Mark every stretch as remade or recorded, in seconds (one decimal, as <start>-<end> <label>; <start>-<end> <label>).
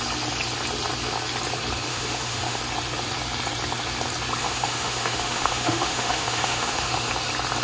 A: 0.0-1.9 recorded; 1.9-2.6 remade; 2.6-4.4 recorded; 4.4-7.1 remade; 7.1-7.6 recorded